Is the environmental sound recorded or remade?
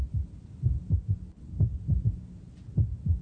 recorded